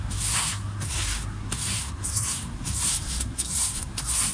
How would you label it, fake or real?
fake